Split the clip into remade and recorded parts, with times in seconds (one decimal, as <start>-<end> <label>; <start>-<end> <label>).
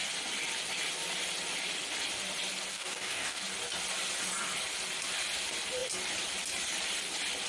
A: 0.0-2.7 recorded; 2.7-3.4 remade; 3.4-7.5 recorded